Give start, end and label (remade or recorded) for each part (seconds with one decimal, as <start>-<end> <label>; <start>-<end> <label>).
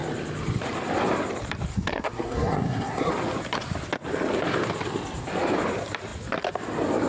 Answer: 0.0-1.7 recorded; 1.7-3.1 remade; 3.1-7.1 recorded